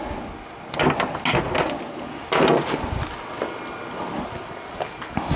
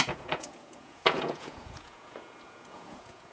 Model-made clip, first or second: second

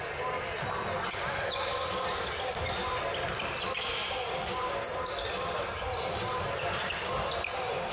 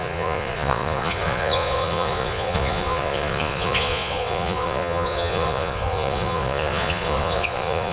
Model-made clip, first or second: second